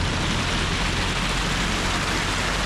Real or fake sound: real